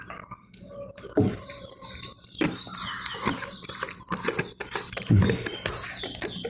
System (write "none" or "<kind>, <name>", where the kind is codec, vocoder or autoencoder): none